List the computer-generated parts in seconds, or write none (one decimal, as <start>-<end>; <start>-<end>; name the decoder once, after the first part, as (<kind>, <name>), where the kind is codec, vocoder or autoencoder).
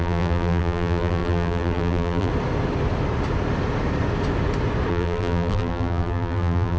0.0-2.3 (vocoder, BigVGAN v2); 4.9-6.8